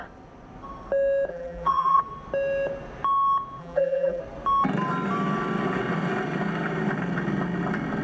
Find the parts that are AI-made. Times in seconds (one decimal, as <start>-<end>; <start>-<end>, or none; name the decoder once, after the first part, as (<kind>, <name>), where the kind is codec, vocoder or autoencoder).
1.3-2.0 (vocoder, BigVGAN v2); 3.6-4.2